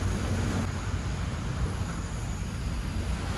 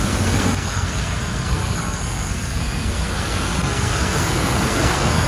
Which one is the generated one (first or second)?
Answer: second